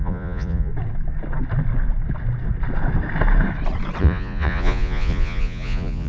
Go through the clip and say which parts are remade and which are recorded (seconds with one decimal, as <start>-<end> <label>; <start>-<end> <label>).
0.0-0.7 remade; 0.7-4.0 recorded; 4.0-6.1 remade